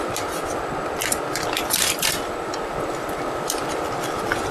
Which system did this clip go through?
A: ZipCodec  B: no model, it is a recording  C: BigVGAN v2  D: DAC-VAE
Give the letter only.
B